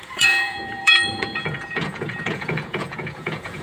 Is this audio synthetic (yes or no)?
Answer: yes